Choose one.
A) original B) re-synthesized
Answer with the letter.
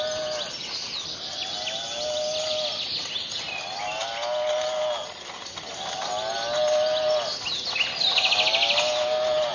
A